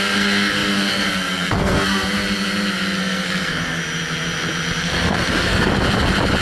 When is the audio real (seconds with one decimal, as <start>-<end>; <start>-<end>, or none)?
2.2-3.0; 3.8-4.8; 5.7-6.4